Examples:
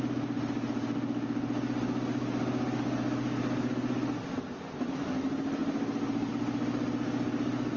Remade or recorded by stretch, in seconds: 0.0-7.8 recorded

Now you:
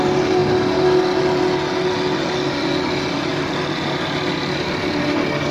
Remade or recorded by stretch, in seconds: 0.0-5.5 recorded

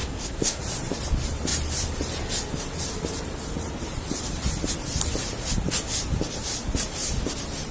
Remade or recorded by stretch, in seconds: 0.0-0.6 remade; 0.6-7.7 recorded

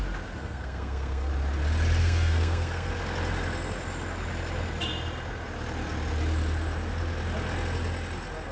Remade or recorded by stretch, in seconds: 0.0-0.4 recorded; 0.4-1.3 remade; 1.3-2.0 recorded; 2.0-2.9 remade; 2.9-8.5 recorded

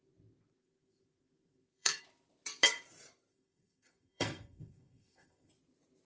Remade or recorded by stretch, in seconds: 0.0-0.6 recorded; 0.6-2.0 remade; 2.0-3.3 recorded; 3.3-5.5 remade; 5.5-6.0 recorded

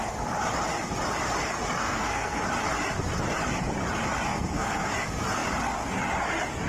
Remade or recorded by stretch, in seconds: 0.0-1.8 recorded; 1.8-2.4 remade; 2.4-4.3 recorded; 4.3-4.9 remade; 4.9-6.7 recorded